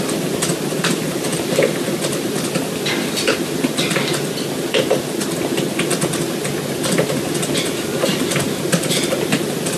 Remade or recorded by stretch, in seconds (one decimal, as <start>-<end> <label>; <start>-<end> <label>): 0.0-9.8 recorded